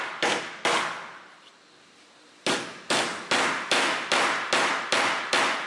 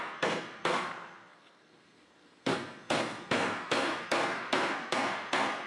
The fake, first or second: second